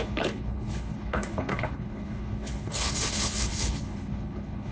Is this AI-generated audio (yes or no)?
yes